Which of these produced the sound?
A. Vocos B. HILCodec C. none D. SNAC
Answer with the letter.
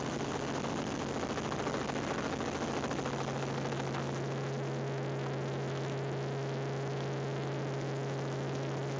C